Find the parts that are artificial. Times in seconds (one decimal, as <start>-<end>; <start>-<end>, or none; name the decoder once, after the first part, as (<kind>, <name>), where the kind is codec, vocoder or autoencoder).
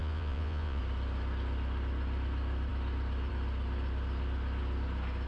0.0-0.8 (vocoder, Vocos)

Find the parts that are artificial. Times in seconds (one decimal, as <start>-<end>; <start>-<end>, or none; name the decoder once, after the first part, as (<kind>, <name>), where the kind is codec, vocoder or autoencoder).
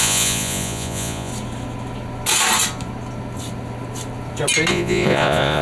0.0-1.3 (vocoder, Vocos); 4.7-5.6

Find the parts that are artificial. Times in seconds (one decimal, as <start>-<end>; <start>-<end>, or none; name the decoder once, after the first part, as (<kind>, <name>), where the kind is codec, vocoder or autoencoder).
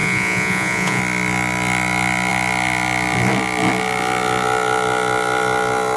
0.0-1.0 (vocoder, Vocos)